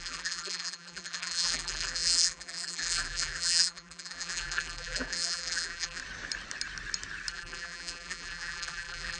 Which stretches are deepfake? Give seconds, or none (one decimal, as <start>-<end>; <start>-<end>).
0.0-6.0; 7.3-9.2